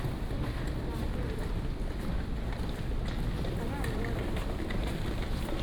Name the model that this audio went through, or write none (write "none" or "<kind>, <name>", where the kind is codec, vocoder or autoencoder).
none